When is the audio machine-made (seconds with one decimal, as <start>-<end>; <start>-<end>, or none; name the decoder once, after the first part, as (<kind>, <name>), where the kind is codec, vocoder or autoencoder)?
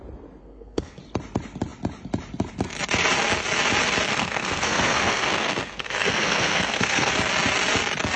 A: 0.4-1.0 (codec, SNAC); 4.1-7.1